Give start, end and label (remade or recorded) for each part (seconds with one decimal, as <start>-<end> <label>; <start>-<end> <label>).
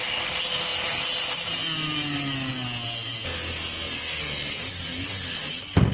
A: 0.0-5.9 recorded